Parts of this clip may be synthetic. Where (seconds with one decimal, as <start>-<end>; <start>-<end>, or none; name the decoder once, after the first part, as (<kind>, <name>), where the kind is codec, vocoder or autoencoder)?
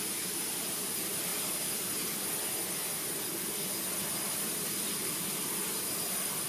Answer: none